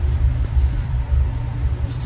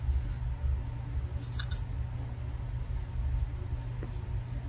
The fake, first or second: first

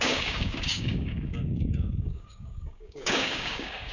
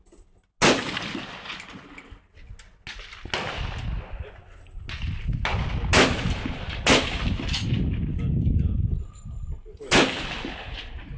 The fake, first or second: first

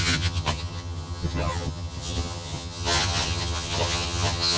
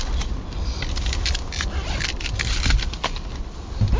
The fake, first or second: first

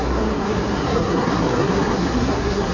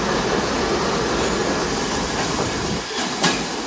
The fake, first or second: first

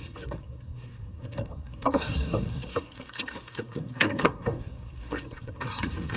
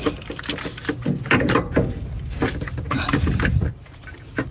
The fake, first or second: first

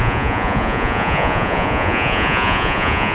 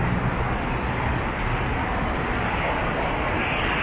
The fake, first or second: first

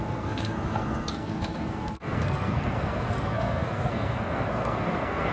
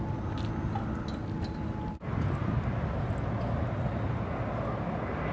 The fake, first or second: first